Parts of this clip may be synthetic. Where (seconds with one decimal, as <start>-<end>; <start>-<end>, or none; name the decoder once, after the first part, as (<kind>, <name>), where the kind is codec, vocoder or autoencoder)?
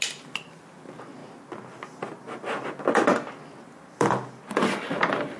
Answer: none